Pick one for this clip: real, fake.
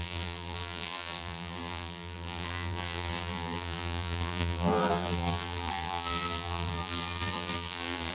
fake